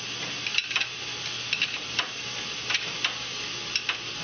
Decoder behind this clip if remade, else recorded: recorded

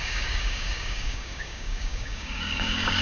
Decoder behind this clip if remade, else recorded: remade, codec, DAC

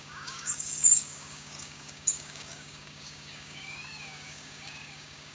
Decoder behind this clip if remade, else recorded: remade, codec, DAC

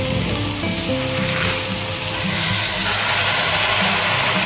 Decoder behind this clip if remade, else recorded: recorded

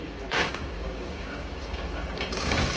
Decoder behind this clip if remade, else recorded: remade, codec, DAC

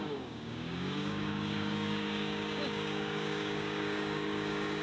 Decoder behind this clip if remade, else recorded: remade, codec, DAC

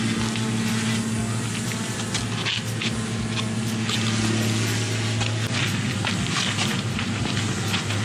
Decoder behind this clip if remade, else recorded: recorded